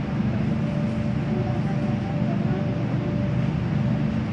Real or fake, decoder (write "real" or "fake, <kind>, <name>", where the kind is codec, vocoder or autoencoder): real